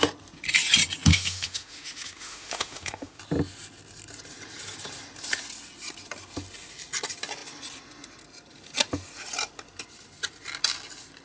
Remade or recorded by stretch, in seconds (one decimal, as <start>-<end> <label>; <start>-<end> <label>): 0.0-1.1 recorded; 1.1-3.2 remade; 3.2-11.2 recorded

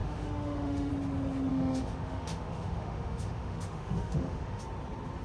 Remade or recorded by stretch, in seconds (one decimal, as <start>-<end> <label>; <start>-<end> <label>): 0.0-0.9 remade; 0.9-1.5 recorded; 1.5-4.6 remade; 4.6-5.2 recorded

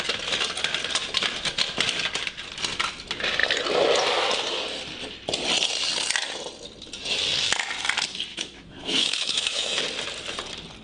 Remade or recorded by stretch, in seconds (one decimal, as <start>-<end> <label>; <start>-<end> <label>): 0.0-8.3 recorded; 8.3-9.8 remade; 9.8-10.8 recorded

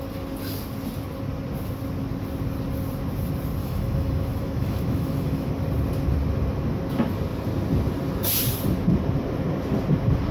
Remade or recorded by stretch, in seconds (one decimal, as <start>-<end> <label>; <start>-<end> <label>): 0.0-3.6 recorded; 3.6-5.5 remade; 5.5-10.3 recorded